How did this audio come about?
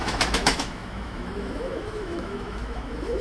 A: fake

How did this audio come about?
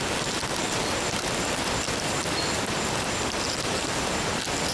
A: real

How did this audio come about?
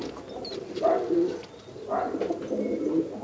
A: real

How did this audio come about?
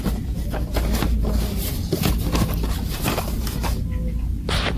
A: real